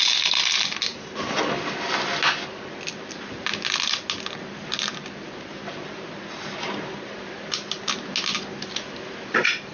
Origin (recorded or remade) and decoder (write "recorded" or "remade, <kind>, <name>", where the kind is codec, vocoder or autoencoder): recorded